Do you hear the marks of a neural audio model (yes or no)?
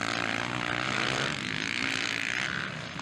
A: no